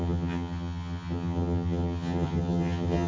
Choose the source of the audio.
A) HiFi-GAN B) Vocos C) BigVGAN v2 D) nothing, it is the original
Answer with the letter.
A